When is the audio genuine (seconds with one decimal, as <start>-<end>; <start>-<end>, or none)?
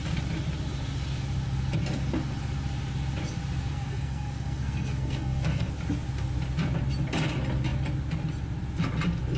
0.0-3.7; 5.7-9.4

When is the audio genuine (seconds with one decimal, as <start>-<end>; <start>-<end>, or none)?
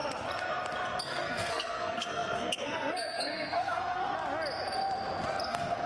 0.0-1.0; 4.0-5.4